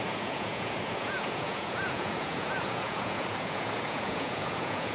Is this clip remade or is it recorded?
remade